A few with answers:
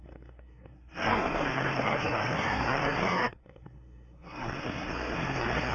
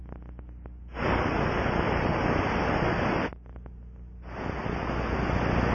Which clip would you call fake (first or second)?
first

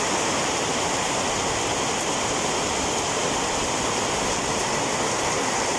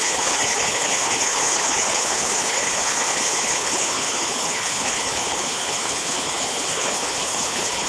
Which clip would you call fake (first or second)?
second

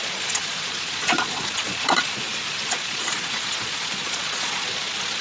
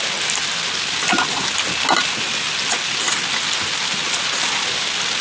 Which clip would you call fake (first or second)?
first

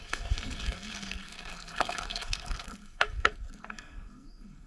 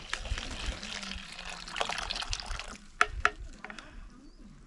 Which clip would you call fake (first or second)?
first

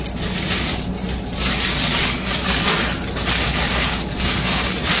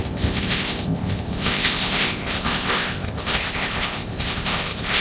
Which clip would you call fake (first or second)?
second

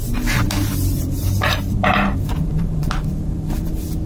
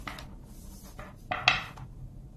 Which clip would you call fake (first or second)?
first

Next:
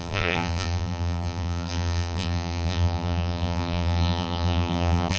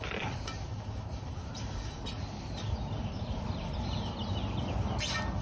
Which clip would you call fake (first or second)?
first